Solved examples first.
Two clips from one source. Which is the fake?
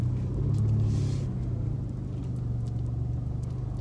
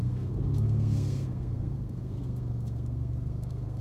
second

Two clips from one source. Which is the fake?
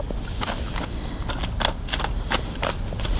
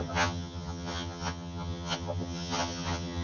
second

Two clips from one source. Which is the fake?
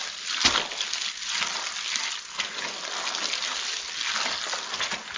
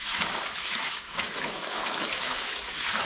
second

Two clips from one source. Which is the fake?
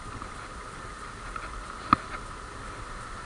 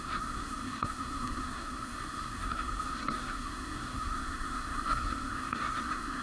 second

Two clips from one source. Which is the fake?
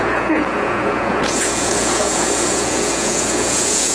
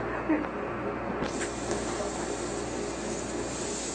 first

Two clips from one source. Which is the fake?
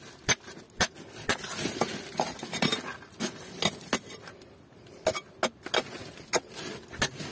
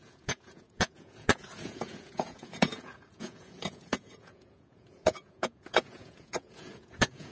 second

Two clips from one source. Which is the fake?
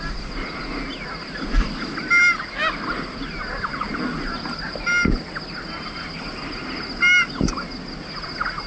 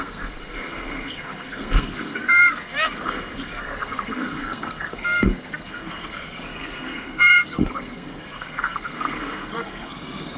second